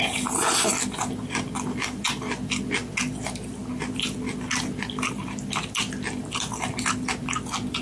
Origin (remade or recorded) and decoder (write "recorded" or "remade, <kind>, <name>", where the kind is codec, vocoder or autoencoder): recorded